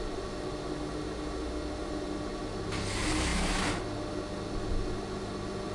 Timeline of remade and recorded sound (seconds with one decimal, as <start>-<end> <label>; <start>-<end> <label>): 0.0-3.3 recorded; 3.3-3.8 remade; 3.8-5.7 recorded